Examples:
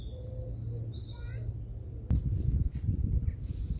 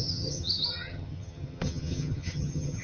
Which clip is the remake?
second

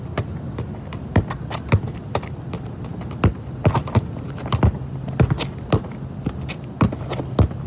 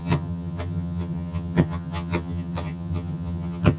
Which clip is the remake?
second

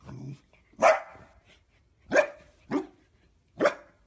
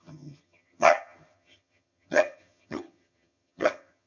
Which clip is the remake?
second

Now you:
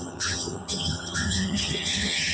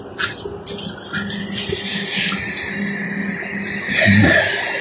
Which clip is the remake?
first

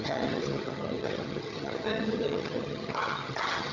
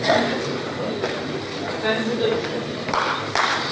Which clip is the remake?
first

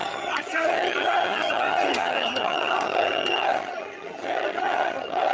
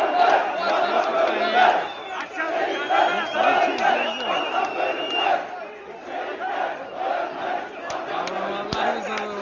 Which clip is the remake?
first